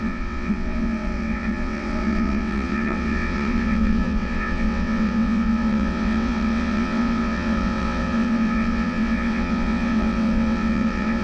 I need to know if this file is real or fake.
fake